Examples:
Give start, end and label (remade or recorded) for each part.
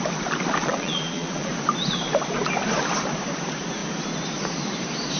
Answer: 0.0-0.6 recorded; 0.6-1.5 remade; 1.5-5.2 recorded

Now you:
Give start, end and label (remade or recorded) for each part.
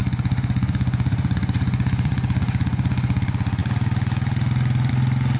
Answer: 0.0-3.2 remade; 3.2-5.4 recorded